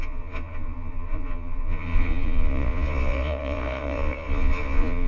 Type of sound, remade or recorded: remade